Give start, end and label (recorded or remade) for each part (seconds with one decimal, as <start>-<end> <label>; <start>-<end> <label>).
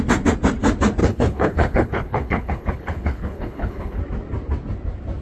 0.0-1.0 recorded; 1.0-4.0 remade; 4.0-5.2 recorded